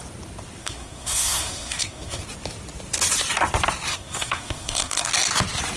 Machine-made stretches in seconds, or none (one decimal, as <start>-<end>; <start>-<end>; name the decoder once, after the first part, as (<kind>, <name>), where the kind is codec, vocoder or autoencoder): 0.6-2.2 (codec, SNAC); 3.9-5.1

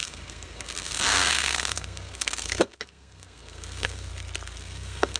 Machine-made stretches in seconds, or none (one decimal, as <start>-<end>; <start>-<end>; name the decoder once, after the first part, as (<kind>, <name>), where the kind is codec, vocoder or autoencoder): 0.0-4.1 (codec, SNAC); 4.6-5.2

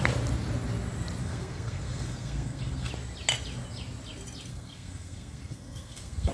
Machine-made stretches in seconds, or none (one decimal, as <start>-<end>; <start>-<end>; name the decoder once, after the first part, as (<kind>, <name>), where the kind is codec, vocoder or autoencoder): 1.2-2.9 (codec, SNAC); 4.5-6.3